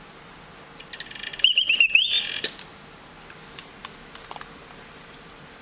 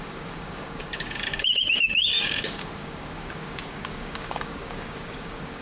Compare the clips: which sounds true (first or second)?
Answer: first